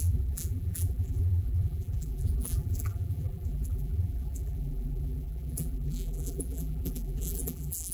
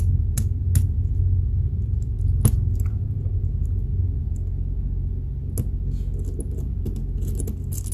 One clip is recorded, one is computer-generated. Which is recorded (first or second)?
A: second